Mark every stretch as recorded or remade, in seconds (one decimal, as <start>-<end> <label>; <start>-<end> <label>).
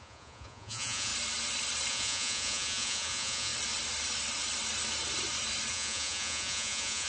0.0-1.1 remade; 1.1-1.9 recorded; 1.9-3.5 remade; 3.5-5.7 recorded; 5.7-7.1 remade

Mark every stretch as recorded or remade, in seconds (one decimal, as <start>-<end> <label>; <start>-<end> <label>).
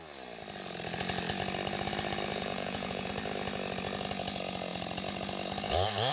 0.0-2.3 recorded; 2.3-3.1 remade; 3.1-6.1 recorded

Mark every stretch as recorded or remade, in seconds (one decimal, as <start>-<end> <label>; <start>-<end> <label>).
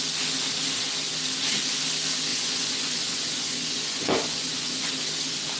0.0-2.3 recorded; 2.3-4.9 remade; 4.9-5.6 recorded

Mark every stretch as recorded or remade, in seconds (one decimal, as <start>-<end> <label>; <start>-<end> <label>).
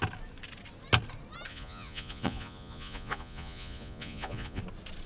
0.0-1.5 recorded; 1.5-4.6 remade; 4.6-5.1 recorded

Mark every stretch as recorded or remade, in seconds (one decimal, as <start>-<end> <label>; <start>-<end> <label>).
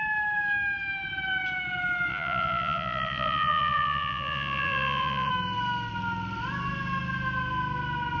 0.0-2.1 recorded; 2.1-5.3 remade; 5.3-8.2 recorded